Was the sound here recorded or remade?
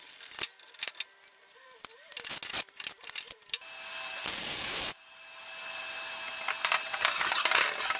recorded